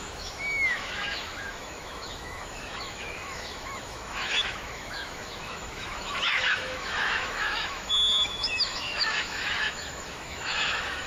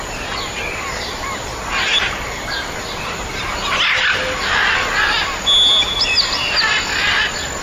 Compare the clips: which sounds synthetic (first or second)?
first